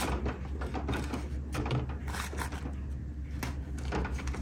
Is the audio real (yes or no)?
yes